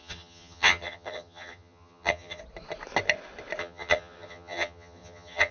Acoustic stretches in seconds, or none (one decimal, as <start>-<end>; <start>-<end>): 2.4-3.6